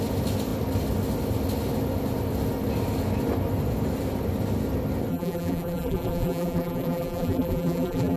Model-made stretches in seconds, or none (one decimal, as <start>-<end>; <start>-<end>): 5.1-8.2